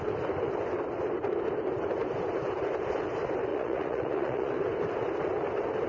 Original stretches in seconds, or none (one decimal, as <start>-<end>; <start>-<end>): 0.0-3.5; 4.5-5.9